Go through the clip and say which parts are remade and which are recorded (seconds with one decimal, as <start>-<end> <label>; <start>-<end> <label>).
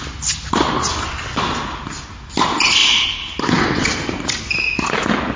0.0-5.4 recorded